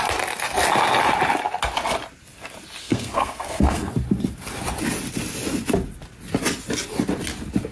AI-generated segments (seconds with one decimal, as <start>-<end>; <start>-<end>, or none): 2.8-3.9